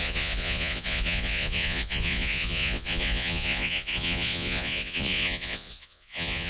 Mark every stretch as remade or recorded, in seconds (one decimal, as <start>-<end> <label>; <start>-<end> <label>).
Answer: 0.0-6.5 remade